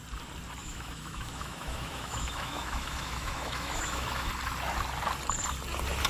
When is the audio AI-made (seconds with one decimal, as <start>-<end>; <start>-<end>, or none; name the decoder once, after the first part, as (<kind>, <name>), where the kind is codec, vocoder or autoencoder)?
0.6-4.3 (autoencoder, DAC-VAE)